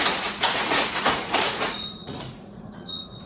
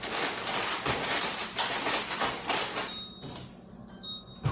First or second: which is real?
second